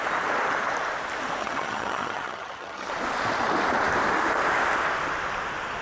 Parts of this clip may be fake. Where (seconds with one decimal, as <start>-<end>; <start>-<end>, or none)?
1.4-2.9

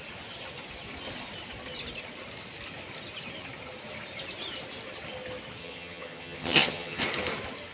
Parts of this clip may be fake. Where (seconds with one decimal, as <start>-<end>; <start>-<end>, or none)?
5.6-7.0

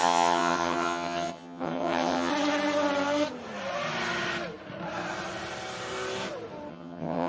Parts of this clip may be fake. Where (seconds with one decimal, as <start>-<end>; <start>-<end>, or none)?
0.0-2.3; 6.7-7.3

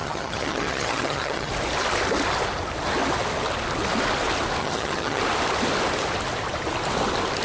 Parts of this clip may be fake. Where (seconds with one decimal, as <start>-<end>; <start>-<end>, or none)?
0.0-1.5; 4.6-5.2

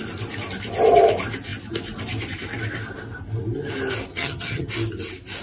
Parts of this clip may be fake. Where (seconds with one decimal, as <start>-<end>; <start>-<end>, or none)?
4.1-4.7